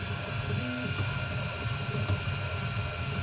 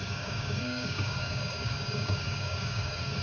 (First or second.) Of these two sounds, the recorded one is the first